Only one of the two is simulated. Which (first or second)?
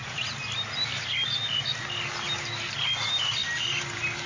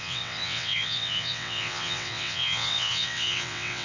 second